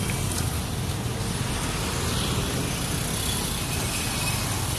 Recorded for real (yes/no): yes